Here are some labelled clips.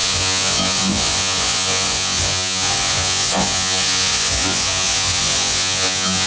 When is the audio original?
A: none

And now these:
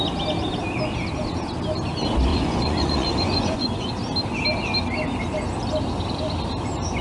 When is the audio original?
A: 0.0-2.3; 3.9-7.0